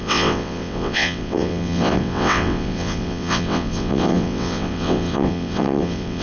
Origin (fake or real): fake